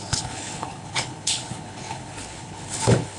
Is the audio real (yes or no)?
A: no